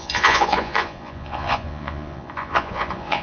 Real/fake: fake